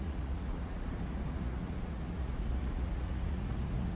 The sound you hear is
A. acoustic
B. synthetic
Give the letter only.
B